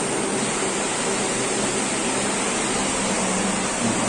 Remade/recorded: recorded